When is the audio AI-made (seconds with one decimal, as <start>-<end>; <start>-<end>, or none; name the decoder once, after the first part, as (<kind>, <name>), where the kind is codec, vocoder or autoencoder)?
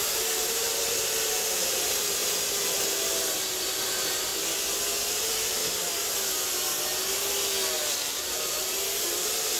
0.0-2.2 (vocoder, BigVGAN v2); 3.3-4.3; 5.1-5.6; 7.9-9.6